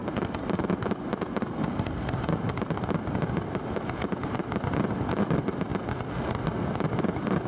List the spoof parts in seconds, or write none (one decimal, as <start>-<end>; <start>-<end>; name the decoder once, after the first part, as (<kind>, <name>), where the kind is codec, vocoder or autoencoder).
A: none